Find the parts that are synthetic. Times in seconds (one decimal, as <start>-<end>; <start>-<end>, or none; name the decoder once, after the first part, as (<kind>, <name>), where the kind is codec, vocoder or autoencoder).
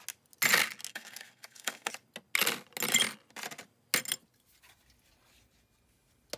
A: 0.9-1.9 (codec, SNAC)